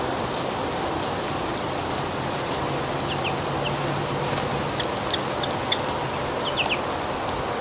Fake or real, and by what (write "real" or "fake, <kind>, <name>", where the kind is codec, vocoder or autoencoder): real